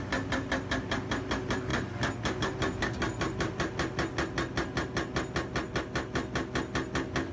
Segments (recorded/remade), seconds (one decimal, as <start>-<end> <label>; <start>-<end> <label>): 0.0-7.3 recorded